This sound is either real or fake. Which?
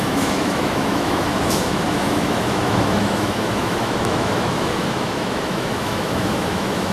fake